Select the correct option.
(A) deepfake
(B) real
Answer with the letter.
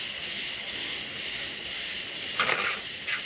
B